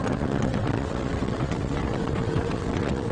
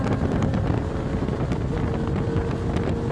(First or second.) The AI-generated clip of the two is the first